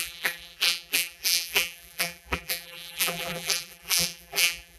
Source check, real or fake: fake